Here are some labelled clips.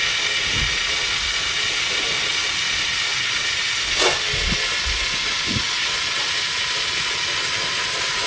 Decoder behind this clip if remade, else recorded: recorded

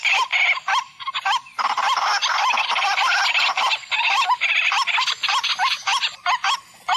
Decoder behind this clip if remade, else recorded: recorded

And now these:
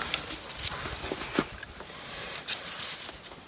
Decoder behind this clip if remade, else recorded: recorded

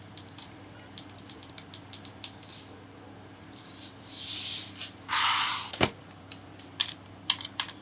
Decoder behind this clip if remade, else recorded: recorded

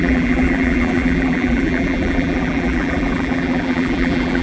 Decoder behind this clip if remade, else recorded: remade, vocoder, BigVGAN v2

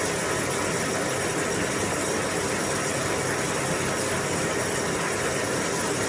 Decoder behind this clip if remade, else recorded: recorded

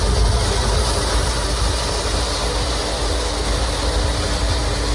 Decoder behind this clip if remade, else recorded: recorded